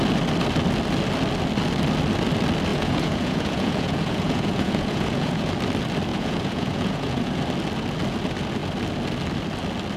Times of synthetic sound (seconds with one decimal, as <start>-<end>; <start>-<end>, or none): 2.7-5.5; 6.1-7.4